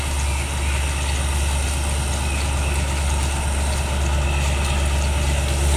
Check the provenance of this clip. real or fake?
real